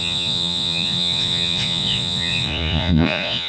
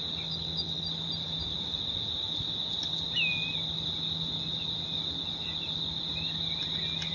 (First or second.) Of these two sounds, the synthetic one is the first